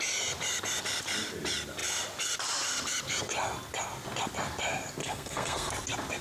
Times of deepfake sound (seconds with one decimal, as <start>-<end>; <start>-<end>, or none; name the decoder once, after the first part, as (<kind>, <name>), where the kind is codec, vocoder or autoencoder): 5.0-5.7 (codec, SNAC)